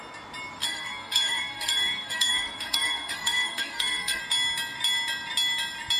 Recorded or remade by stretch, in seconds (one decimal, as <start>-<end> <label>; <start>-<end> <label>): 0.0-0.6 recorded; 0.6-4.2 remade; 4.2-6.0 recorded